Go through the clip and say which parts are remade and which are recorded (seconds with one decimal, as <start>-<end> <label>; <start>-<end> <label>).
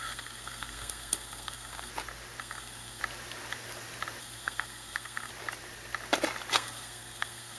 0.0-1.9 remade; 1.9-2.4 recorded; 2.4-3.0 remade; 3.0-4.2 recorded; 4.2-5.3 remade; 5.3-6.5 recorded; 6.5-7.6 remade